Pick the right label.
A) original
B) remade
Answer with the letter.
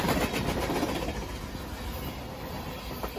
A